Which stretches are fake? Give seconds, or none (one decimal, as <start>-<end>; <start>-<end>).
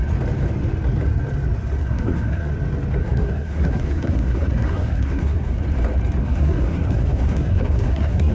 1.8-2.5; 3.0-5.6; 6.2-8.3